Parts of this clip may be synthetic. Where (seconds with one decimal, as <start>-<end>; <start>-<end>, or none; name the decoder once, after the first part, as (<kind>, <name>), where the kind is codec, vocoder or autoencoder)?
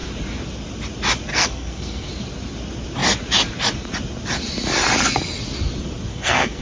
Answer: 1.3-2.1 (codec, SNAC); 6.1-6.6